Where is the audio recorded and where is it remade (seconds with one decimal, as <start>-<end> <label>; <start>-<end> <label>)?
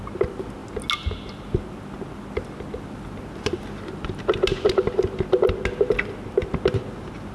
0.0-7.3 recorded